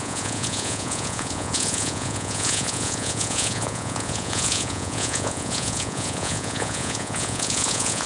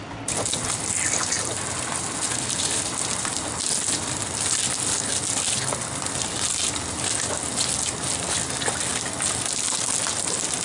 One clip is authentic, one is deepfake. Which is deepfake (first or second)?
first